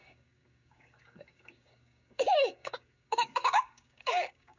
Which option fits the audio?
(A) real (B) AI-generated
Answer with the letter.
B